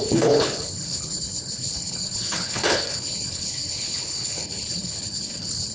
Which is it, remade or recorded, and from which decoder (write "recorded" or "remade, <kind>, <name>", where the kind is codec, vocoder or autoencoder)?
remade, codec, HILCodec